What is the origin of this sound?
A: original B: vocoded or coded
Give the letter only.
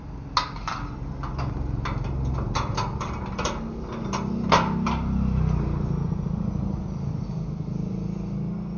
A